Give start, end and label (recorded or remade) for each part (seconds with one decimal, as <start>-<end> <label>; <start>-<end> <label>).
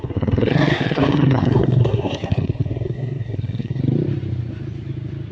0.0-3.8 remade; 3.8-5.3 recorded